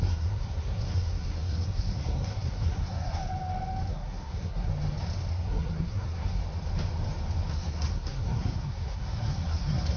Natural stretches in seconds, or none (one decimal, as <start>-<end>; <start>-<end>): 3.2-3.9; 4.7-5.3; 6.4-7.5